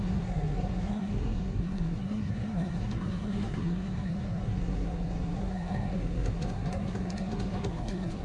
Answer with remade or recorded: remade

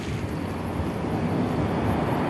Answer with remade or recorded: recorded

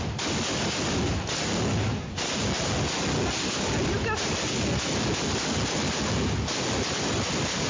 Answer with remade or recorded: recorded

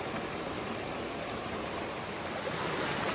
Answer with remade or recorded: recorded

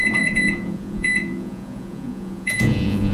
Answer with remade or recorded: remade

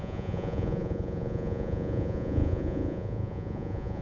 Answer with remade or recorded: remade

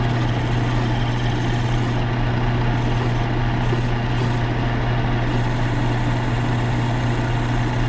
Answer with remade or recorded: recorded